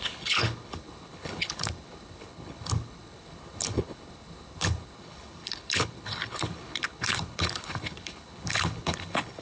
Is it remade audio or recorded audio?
remade